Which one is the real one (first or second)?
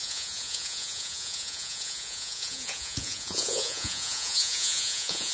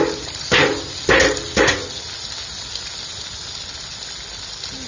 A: second